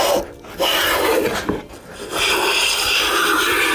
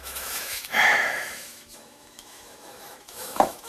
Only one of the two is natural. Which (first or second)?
first